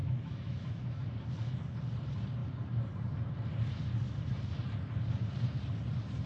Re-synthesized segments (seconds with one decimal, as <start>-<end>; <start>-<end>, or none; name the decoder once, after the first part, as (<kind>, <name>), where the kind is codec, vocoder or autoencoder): 0.0-1.0 (autoencoder, DAC-VAE)